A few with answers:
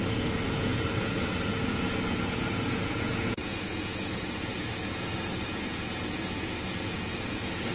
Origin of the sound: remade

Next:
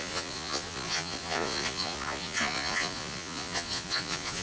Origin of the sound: remade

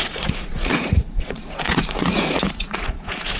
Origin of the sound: remade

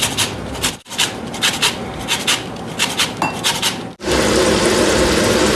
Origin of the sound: recorded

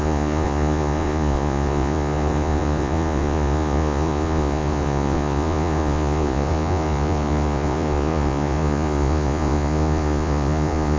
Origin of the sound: remade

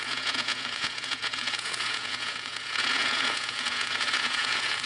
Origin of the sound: remade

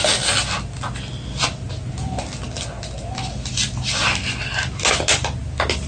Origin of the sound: recorded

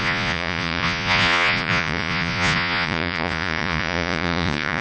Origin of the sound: remade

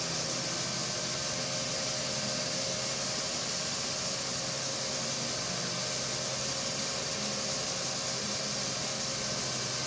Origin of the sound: recorded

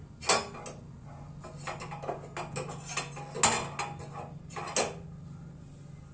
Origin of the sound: recorded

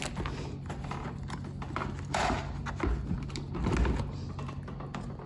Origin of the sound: recorded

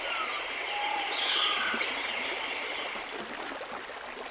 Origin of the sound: recorded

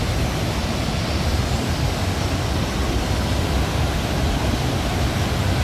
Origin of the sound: recorded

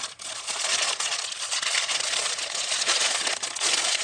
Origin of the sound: remade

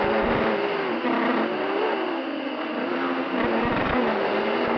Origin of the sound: recorded